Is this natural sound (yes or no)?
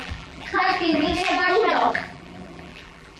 no